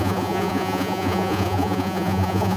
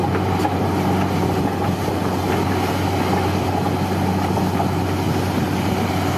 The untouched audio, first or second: second